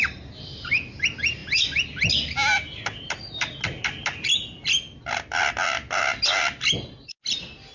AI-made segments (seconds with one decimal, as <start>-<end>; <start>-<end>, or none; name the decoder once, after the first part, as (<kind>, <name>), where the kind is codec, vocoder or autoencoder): none